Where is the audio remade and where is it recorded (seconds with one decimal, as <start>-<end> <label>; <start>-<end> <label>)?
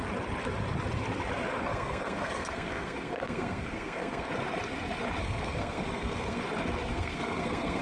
0.0-1.5 recorded; 1.5-4.3 remade; 4.3-5.2 recorded; 5.2-6.4 remade; 6.4-6.9 recorded; 6.9-7.8 remade